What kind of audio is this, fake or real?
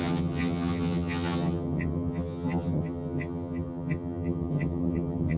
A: fake